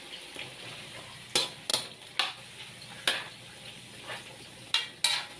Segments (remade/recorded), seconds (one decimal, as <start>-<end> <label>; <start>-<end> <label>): 0.0-5.4 recorded